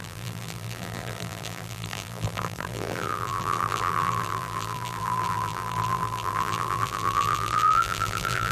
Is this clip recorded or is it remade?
remade